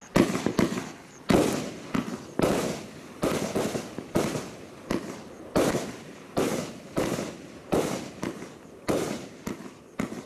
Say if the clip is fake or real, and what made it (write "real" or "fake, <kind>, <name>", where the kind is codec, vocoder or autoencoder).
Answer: real